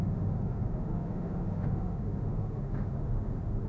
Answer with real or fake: fake